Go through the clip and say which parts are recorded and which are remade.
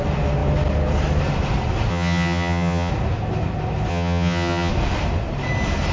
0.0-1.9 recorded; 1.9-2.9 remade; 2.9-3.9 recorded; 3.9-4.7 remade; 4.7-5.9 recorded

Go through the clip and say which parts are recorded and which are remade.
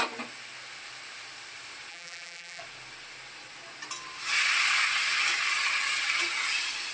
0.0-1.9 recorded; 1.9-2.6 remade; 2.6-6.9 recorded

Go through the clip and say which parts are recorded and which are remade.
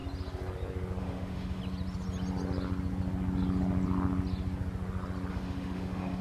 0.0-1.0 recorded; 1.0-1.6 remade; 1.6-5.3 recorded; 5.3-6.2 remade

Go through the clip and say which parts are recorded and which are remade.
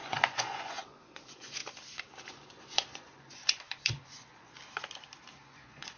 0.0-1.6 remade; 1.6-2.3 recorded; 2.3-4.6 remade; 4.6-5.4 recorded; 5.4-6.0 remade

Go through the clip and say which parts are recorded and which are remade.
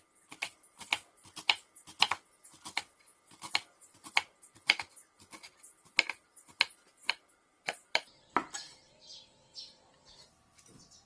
0.0-7.0 recorded; 7.0-8.4 remade; 8.4-11.1 recorded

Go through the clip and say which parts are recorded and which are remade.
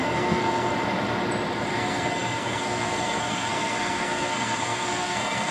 0.0-0.7 remade; 0.7-1.7 recorded; 1.7-5.5 remade